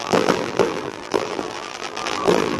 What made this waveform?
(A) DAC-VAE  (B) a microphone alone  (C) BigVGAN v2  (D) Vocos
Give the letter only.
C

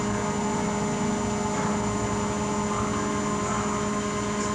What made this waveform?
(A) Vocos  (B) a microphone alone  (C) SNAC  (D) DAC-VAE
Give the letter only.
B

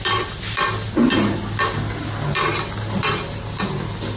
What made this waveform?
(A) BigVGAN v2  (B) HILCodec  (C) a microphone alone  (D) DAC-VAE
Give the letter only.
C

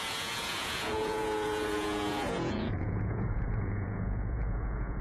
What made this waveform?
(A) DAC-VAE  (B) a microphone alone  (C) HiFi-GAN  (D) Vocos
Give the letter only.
D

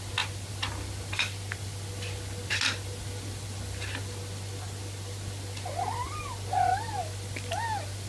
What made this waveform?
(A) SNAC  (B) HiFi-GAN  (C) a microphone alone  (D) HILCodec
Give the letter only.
C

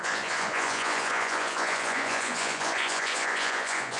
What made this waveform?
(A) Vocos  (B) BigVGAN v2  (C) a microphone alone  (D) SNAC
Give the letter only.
A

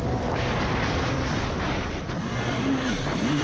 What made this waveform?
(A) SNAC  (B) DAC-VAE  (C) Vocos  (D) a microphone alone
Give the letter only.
D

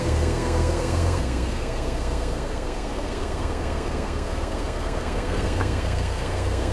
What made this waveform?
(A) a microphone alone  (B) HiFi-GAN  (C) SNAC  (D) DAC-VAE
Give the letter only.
C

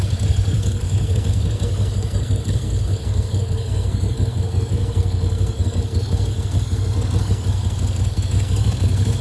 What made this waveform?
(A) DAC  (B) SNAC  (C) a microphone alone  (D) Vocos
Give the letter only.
B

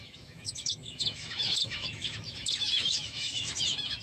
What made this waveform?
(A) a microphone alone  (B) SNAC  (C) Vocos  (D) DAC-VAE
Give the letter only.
D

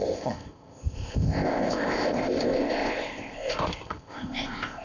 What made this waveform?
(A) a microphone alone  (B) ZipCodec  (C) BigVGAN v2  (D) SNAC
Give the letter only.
B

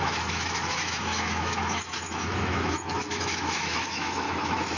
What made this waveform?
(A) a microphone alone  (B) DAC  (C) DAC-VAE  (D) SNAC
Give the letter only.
C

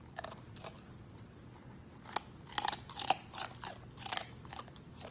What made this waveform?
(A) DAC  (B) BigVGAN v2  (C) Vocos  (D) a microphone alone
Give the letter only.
D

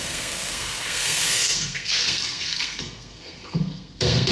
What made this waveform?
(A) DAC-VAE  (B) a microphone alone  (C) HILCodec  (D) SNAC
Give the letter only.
D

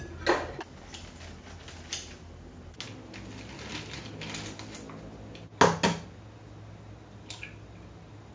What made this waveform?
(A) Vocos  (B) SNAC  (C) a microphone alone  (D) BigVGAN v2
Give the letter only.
C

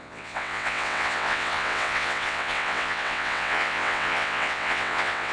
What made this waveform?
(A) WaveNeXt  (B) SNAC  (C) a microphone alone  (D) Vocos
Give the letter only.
A